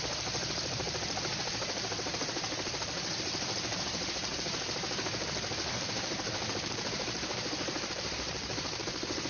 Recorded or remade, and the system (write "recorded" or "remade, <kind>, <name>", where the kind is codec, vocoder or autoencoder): remade, vocoder, BigVGAN v2